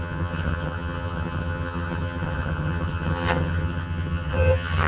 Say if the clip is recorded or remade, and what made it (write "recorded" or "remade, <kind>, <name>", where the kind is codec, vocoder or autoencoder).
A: remade, vocoder, HiFi-GAN